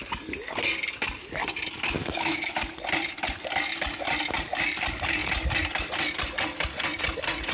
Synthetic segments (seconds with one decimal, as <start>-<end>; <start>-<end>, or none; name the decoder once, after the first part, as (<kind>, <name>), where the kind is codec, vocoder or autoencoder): 2.0-2.5 (autoencoder, DAC-VAE)